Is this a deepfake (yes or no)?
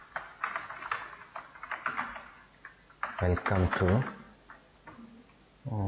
no